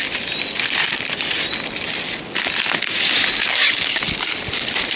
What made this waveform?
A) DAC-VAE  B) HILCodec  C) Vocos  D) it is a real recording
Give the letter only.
D